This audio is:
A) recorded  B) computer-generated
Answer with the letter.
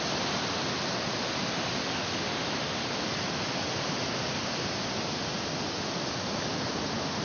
A